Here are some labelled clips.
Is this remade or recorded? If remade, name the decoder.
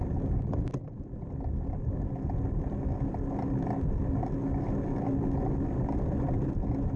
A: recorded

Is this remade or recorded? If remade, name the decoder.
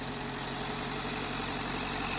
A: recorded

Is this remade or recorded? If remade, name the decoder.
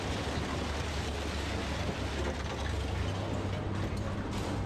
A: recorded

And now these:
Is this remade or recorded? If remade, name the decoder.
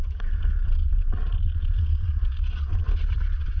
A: remade, vocoder, Vocos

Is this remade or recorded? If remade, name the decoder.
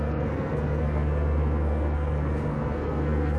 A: remade, codec, SNAC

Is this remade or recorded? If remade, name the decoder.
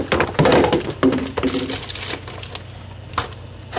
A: recorded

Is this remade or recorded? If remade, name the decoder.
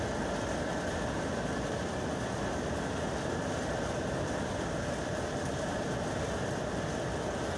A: recorded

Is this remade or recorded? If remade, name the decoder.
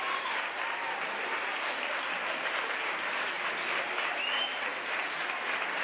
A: recorded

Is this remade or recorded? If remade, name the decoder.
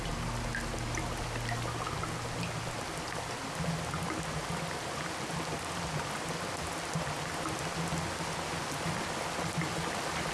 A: recorded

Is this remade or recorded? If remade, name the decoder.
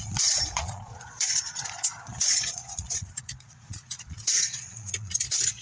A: remade, vocoder, Vocos